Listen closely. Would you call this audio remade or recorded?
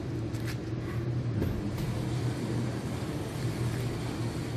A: recorded